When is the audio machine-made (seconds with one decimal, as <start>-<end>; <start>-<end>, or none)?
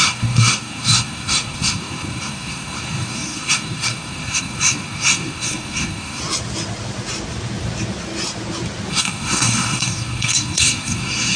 0.0-6.2; 8.9-11.4